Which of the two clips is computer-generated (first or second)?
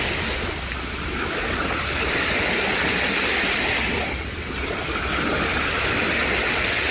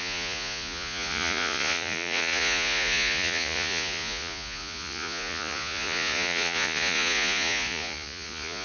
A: second